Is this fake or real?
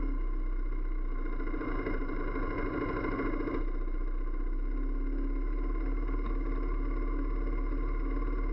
real